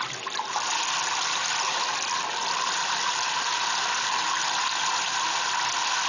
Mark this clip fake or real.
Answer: real